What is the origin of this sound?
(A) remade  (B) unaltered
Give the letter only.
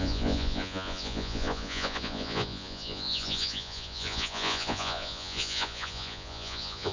A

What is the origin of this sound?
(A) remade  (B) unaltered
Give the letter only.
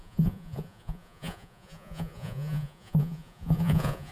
A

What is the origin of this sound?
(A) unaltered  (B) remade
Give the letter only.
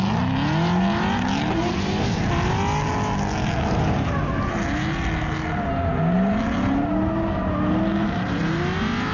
A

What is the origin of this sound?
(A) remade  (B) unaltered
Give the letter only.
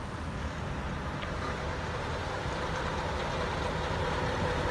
B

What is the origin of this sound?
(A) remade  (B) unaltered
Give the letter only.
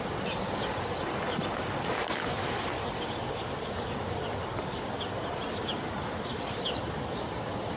B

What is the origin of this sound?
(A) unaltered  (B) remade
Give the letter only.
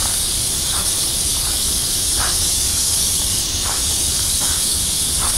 B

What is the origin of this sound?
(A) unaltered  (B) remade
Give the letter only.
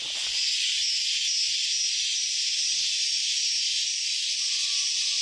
A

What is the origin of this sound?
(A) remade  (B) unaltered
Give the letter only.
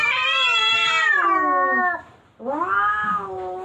B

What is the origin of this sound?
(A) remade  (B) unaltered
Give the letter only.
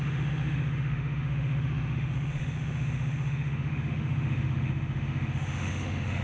A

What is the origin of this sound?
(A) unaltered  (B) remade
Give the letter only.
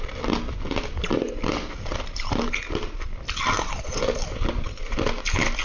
A